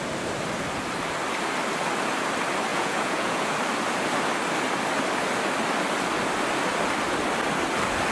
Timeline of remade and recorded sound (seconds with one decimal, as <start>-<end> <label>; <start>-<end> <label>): 0.0-2.7 recorded; 2.7-3.5 remade; 3.5-8.1 recorded